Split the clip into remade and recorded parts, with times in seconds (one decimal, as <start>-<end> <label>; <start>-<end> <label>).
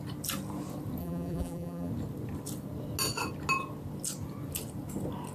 0.0-1.0 recorded; 1.0-1.9 remade; 1.9-5.3 recorded